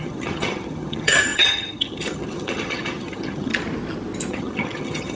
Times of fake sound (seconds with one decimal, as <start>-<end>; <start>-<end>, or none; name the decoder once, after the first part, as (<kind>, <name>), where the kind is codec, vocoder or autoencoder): 0.0-3.5 (vocoder, HiFi-GAN); 4.3-5.1

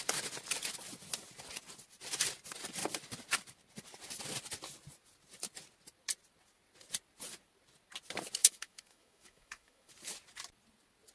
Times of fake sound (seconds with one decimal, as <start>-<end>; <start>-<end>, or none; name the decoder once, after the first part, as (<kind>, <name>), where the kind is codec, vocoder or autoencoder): 8.4-9.9 (autoencoder, DAC-VAE)